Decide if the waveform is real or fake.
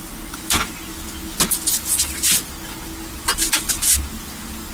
real